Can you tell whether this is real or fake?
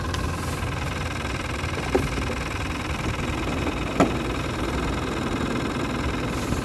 real